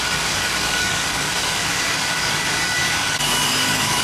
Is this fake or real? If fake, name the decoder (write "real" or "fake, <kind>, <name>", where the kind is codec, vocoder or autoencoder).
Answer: fake, codec, DAC